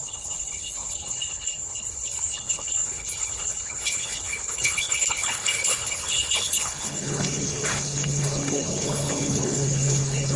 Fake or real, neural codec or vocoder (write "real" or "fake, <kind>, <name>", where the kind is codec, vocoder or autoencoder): fake, codec, HILCodec